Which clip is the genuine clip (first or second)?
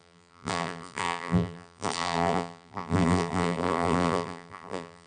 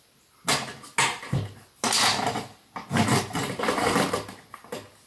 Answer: second